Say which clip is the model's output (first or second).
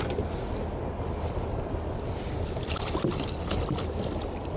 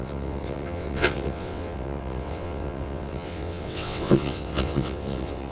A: second